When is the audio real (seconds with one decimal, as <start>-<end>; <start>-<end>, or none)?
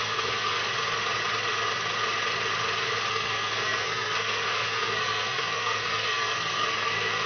0.6-3.1